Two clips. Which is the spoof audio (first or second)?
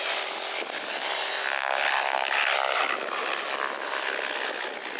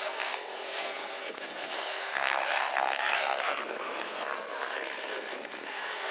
second